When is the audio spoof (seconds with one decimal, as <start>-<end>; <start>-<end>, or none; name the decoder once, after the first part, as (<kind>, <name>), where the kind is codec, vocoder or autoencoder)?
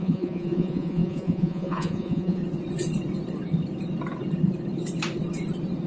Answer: 0.0-2.4 (vocoder, Vocos)